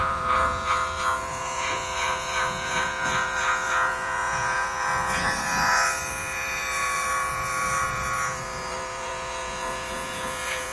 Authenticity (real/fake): fake